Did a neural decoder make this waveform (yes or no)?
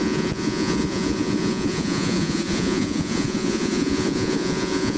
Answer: yes